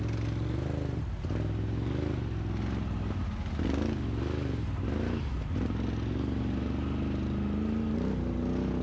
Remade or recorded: recorded